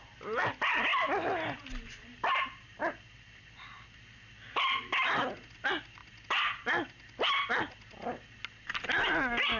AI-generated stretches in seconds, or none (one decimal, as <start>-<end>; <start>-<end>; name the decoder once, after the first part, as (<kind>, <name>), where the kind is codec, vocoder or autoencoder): none